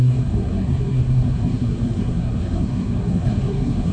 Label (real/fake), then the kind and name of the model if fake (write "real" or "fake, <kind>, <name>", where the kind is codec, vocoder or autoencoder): fake, codec, SNAC